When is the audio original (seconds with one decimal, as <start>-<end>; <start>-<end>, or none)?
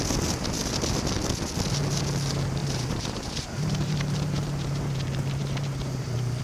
0.0-2.6